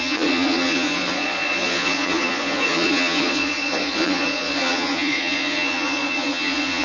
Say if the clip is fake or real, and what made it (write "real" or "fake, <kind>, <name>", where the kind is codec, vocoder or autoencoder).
fake, vocoder, Vocos